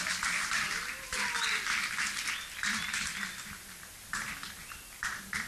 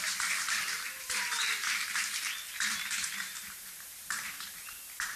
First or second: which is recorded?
first